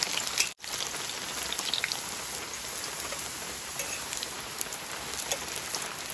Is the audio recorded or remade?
recorded